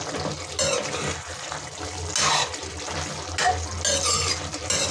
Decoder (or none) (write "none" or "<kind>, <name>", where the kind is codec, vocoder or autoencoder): none